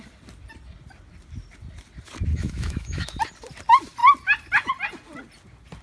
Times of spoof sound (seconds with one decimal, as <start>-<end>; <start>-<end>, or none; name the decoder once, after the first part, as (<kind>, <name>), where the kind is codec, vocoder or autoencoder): 2.3-3.2 (autoencoder, DAC-VAE)